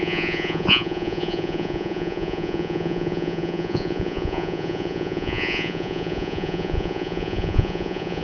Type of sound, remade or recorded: remade